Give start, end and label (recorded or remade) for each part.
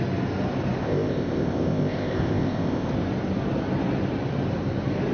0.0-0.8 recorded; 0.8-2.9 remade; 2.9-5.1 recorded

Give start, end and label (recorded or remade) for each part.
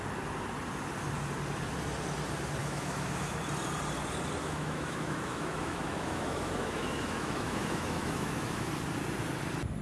0.0-2.6 recorded; 2.6-3.4 remade; 3.4-4.4 recorded; 4.4-8.7 remade; 8.7-9.8 recorded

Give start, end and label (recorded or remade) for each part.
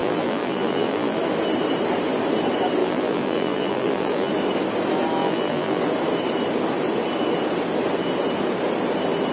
0.0-1.2 remade; 1.2-2.8 recorded; 2.8-4.3 remade; 4.3-5.2 recorded; 5.2-5.8 remade; 5.8-9.3 recorded